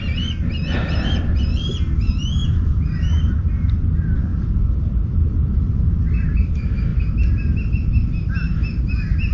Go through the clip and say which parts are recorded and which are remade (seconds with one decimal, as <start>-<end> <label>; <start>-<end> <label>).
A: 0.0-2.4 recorded; 2.4-3.7 remade; 3.7-4.3 recorded; 4.3-5.9 remade; 5.9-9.3 recorded

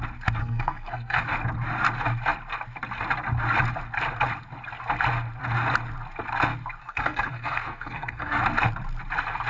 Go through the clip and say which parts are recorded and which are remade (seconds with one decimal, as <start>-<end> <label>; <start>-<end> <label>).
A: 0.0-0.4 recorded; 0.4-1.2 remade; 1.2-6.8 recorded; 6.8-8.4 remade; 8.4-9.5 recorded